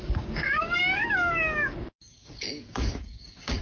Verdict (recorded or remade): remade